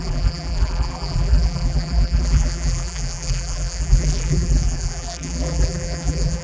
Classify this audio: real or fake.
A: fake